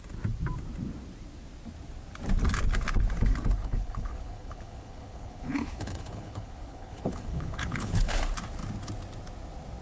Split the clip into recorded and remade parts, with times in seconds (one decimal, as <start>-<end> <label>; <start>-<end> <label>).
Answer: 0.0-3.6 recorded; 3.6-8.2 remade; 8.2-9.8 recorded